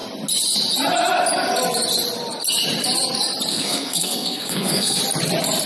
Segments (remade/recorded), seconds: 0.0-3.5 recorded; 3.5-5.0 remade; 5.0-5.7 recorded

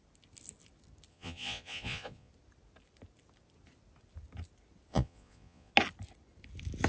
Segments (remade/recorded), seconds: 0.0-1.1 recorded; 1.1-2.3 remade; 2.3-4.9 recorded; 4.9-5.7 remade; 5.7-6.9 recorded

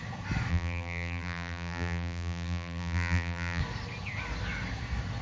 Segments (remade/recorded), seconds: 0.0-0.5 recorded; 0.5-3.6 remade; 3.6-5.2 recorded